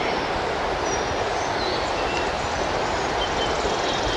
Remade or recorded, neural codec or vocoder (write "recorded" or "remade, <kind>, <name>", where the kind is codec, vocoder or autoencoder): recorded